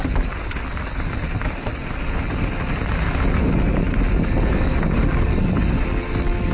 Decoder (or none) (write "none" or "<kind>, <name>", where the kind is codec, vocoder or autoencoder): none